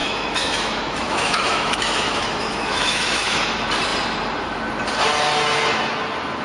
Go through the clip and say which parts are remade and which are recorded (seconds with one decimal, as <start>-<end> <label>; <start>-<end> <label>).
0.0-3.5 remade; 3.5-6.4 recorded